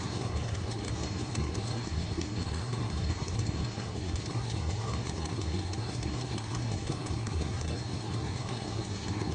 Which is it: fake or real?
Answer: fake